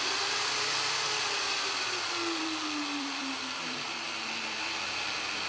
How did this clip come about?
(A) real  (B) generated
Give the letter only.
B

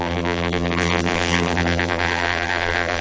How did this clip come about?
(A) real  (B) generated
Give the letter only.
B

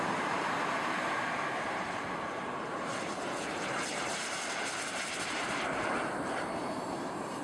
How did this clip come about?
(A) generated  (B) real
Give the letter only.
A